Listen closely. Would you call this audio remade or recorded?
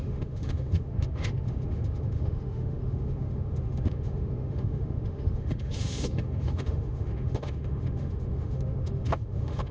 remade